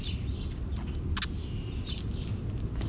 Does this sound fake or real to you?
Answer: real